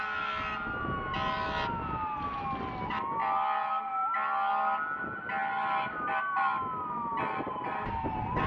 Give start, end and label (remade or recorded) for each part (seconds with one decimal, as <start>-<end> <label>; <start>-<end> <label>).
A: 0.0-8.5 recorded